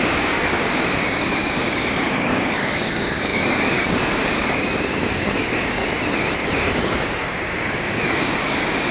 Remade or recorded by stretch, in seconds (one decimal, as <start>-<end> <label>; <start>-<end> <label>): 0.0-5.8 remade; 5.8-6.6 recorded; 6.6-8.9 remade